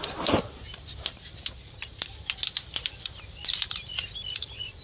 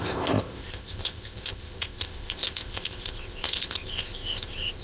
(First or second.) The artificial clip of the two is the second